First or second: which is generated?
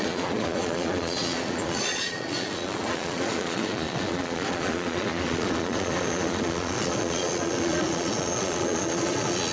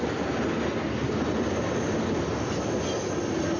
first